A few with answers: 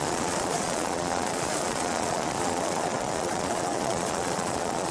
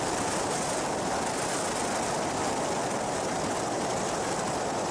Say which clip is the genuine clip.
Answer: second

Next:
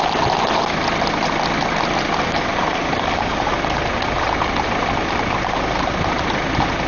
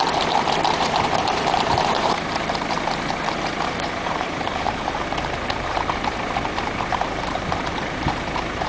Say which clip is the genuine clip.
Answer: first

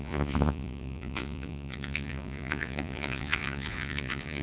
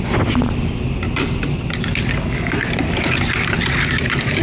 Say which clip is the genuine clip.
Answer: second